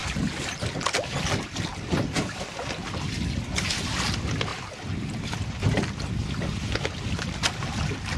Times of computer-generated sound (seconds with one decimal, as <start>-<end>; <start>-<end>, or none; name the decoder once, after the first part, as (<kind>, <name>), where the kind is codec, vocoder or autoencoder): none